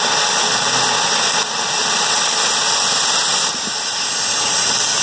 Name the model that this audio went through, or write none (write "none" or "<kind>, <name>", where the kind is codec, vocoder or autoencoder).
none